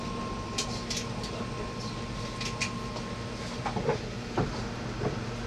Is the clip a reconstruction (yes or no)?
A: no